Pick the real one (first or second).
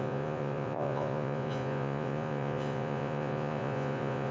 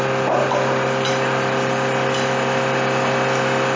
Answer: second